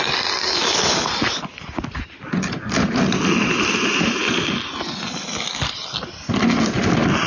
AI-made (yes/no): no